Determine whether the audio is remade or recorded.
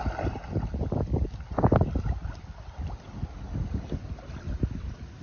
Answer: recorded